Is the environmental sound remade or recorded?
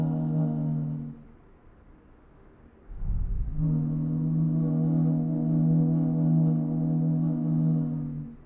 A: recorded